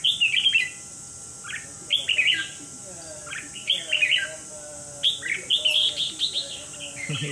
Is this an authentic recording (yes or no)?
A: yes